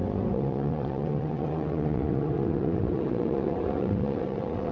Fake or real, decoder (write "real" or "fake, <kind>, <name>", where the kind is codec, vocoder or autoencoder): fake, vocoder, WaveNeXt